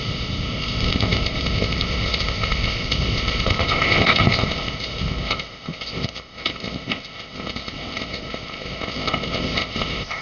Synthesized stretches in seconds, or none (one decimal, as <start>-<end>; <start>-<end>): 0.0-10.2